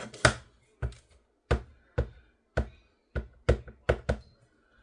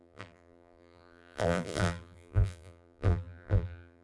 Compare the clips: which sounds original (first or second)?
first